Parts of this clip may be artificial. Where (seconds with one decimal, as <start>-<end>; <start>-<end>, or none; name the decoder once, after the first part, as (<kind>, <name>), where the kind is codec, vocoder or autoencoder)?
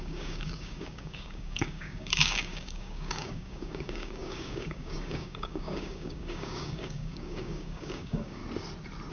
0.0-8.4 (codec, DAC)